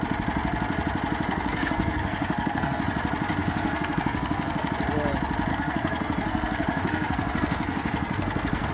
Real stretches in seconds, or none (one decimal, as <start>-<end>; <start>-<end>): 0.0-1.3; 2.8-3.4; 4.7-5.5